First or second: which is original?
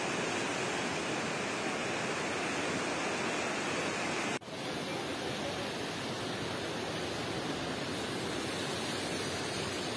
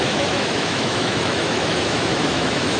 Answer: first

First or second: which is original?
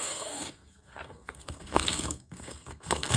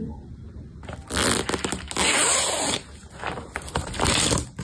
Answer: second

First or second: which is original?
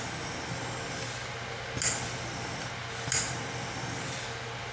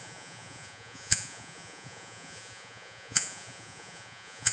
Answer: first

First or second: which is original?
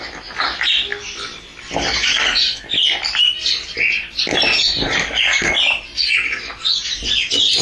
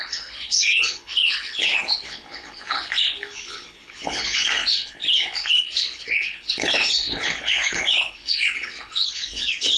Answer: first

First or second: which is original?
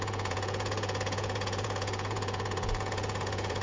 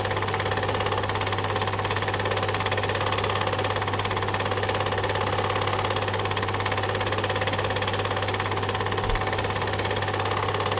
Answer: second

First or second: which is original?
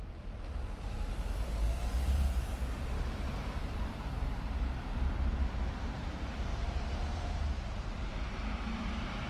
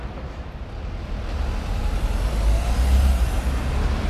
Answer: second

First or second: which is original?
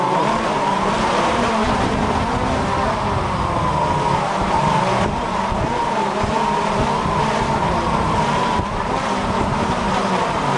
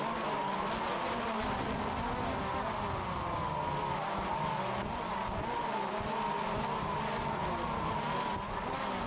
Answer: second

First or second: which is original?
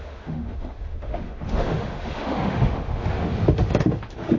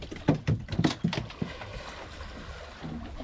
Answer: second